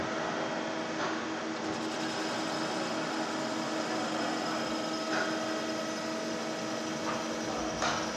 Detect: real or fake real